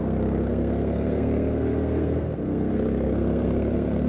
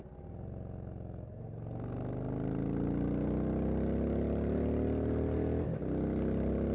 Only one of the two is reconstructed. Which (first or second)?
first